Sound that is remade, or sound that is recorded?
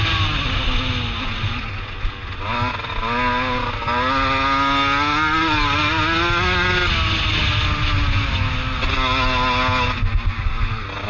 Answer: recorded